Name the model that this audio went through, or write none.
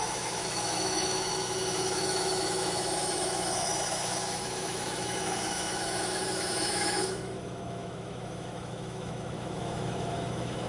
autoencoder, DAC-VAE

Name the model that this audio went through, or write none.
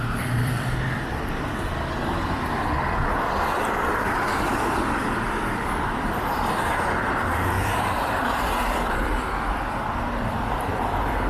vocoder, BigVGAN v2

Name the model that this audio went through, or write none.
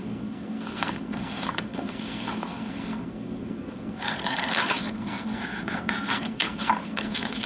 codec, SNAC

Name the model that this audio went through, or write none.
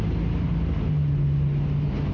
none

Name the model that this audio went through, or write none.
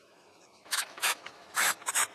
autoencoder, DAC-VAE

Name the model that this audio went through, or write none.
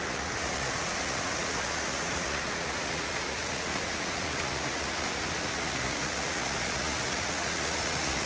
vocoder, Vocos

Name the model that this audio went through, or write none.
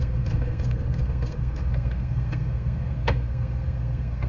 codec, SNAC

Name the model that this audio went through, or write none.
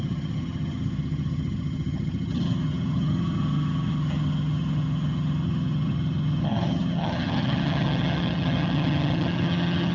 vocoder, HiFi-GAN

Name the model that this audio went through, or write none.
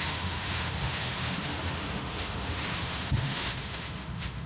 autoencoder, DAC-VAE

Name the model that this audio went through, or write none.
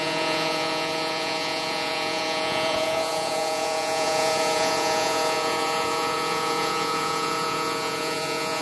vocoder, Vocos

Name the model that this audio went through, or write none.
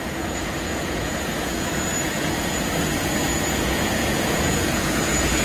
vocoder, Vocos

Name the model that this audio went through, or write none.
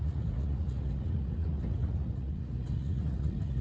vocoder, Vocos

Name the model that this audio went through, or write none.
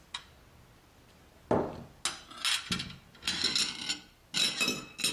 none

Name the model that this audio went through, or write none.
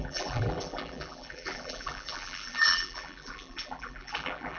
vocoder, BigVGAN v2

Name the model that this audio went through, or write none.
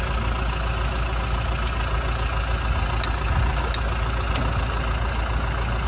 none